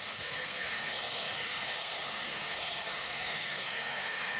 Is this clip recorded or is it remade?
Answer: remade